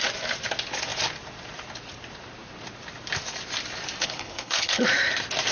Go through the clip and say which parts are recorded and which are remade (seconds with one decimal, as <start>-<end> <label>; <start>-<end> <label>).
0.0-4.0 recorded; 4.0-4.8 remade; 4.8-5.5 recorded